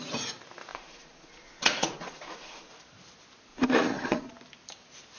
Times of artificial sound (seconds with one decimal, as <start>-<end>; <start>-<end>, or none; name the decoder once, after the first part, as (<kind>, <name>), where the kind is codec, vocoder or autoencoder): 0.7-2.7 (vocoder, Vocos); 3.5-4.3